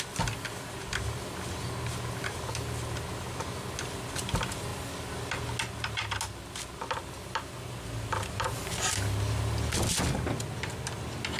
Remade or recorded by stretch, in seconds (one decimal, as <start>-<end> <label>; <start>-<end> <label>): 0.0-11.4 recorded

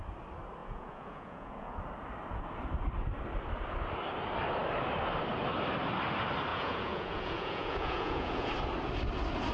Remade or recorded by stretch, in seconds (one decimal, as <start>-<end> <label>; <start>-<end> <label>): 0.0-0.6 recorded; 0.6-1.8 remade; 1.8-6.5 recorded; 6.5-8.5 remade; 8.5-9.5 recorded

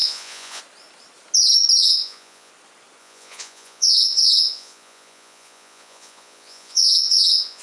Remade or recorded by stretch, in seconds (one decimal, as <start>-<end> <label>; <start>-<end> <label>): 0.0-0.6 remade; 0.6-1.8 recorded; 1.8-2.5 remade; 2.5-3.0 recorded; 3.0-7.6 remade